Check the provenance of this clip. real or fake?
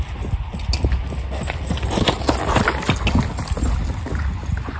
real